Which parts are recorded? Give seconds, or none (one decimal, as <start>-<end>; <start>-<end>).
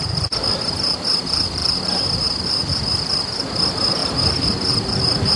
0.0-5.4